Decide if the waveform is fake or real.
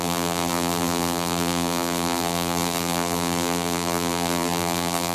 fake